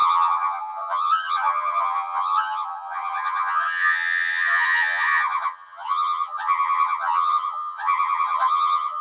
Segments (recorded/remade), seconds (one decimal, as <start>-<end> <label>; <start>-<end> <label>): 0.0-9.0 remade